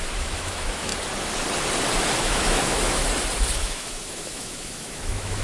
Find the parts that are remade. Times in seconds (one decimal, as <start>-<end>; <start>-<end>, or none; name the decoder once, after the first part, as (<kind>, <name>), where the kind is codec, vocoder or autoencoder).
0.0-0.9 (autoencoder, DAC-VAE); 2.2-3.0; 3.5-5.4